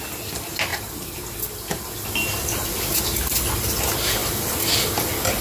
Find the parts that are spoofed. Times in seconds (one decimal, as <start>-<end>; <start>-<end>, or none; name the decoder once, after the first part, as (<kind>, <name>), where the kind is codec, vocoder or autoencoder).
none